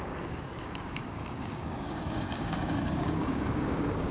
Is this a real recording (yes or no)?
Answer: no